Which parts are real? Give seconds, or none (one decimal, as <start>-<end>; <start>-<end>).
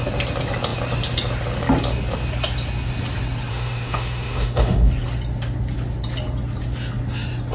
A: 0.0-3.5; 4.9-7.5